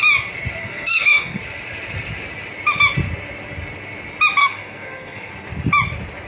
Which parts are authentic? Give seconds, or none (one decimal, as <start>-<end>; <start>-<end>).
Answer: 0.0-0.6; 1.4-4.4; 5.3-6.3